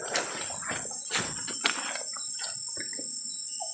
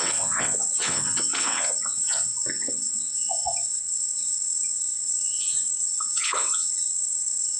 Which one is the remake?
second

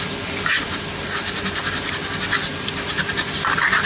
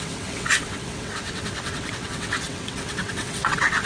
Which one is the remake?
second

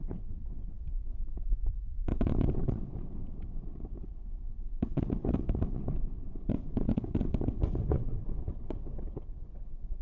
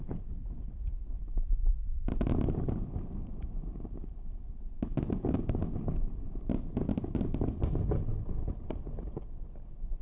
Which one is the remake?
first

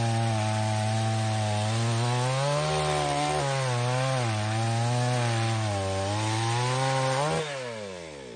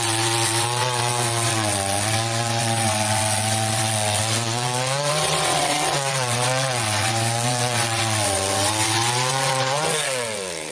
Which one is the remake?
second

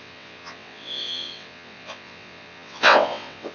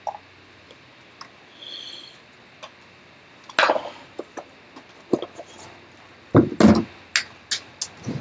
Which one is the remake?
first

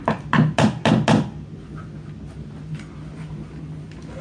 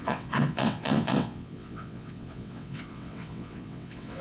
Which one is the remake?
second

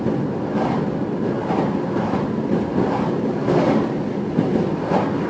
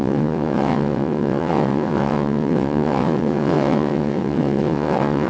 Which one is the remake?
second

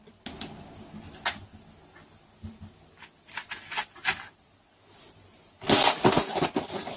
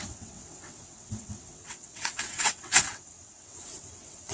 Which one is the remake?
second